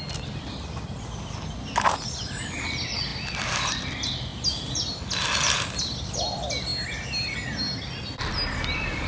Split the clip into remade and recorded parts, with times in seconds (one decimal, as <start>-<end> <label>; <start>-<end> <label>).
0.0-9.1 recorded